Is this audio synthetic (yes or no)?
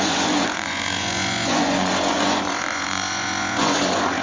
yes